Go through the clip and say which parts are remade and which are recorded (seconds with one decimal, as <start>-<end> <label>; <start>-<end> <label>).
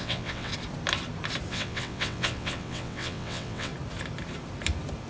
0.0-0.5 remade; 0.5-1.5 recorded; 1.5-3.7 remade; 3.7-5.1 recorded